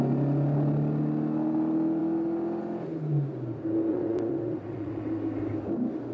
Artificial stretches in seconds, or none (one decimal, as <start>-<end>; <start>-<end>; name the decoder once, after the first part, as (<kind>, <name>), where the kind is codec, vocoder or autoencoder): 3.9-5.1 (vocoder, WaveNeXt)